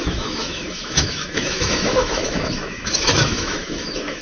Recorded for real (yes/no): no